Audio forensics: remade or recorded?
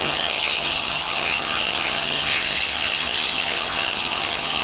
remade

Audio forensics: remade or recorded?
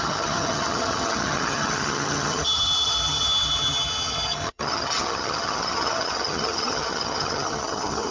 remade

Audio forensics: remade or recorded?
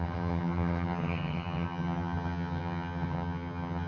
remade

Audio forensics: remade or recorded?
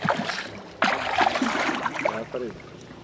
recorded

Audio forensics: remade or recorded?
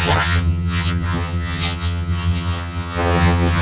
remade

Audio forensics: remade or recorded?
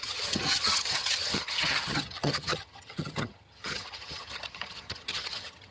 remade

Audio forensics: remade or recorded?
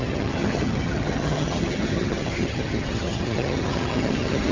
remade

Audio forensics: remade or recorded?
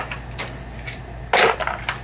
recorded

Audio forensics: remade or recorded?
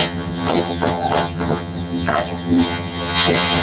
remade